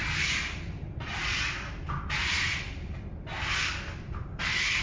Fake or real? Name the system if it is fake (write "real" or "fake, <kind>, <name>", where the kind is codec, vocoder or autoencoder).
real